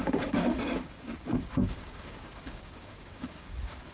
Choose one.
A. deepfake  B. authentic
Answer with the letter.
A